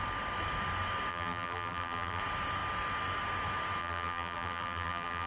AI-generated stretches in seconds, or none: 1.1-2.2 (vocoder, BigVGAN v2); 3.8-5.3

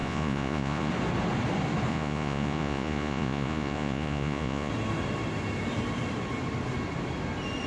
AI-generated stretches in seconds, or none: 0.0-0.9 (vocoder, Vocos); 1.9-4.7

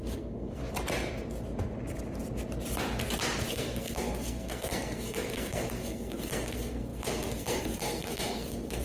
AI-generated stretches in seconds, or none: 0.0-0.6 (codec, SNAC); 3.5-8.8

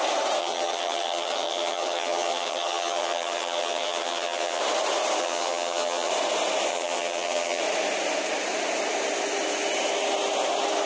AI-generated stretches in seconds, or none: 0.4-4.6 (vocoder, HiFi-GAN); 5.2-6.1; 6.7-7.6

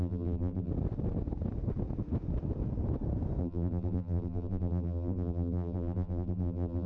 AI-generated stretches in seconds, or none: 0.0-0.7 (vocoder, BigVGAN v2); 3.4-6.9

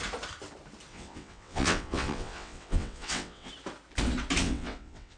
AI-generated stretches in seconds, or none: 0.9-3.5 (vocoder, WaveNeXt); 4.4-5.2

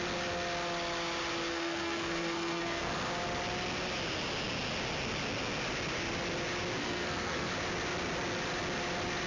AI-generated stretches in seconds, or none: 1.5-2.9 (codec, SNAC); 6.8-7.5